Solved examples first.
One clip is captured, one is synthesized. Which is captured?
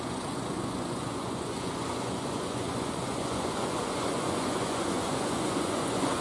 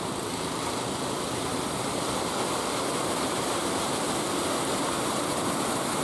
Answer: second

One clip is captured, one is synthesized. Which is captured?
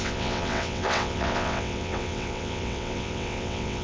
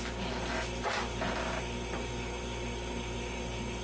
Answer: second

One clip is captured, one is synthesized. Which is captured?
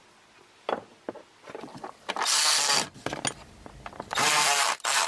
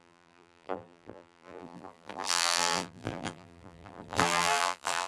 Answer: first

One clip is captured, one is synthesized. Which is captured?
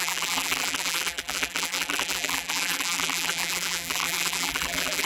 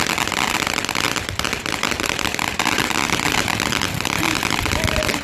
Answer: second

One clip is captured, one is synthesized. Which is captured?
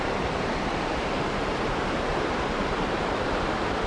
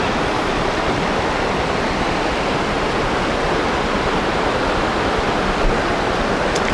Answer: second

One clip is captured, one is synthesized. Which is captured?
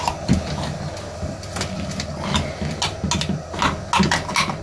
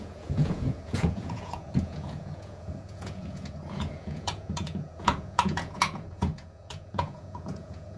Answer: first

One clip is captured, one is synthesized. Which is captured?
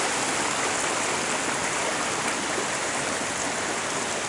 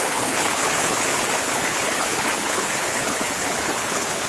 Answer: first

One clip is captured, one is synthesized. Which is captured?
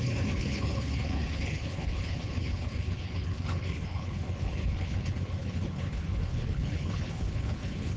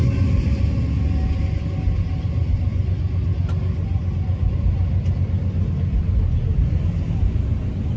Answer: second